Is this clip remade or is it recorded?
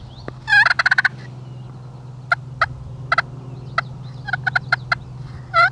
recorded